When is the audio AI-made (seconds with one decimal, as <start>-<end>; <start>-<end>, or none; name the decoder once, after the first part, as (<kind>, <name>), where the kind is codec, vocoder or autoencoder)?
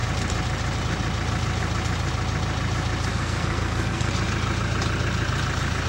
3.1-4.1 (codec, SNAC)